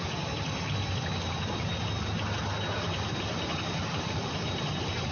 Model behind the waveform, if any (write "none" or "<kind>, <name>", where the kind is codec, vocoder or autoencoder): none